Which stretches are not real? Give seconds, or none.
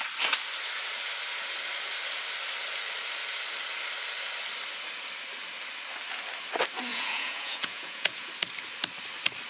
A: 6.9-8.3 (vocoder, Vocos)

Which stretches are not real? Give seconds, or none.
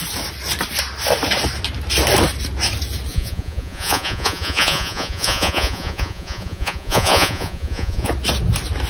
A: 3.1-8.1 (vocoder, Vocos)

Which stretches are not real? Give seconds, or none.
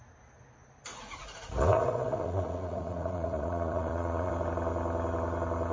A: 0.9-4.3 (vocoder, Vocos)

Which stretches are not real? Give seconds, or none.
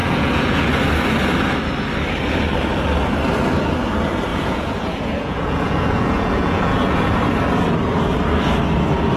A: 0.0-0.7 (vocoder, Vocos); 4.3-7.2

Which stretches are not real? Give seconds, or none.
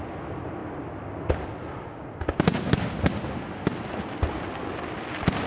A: none